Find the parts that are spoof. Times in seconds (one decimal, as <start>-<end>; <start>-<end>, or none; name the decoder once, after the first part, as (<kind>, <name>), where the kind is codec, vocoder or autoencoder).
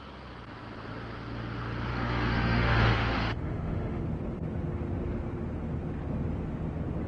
1.9-4.0 (autoencoder, DAC-VAE)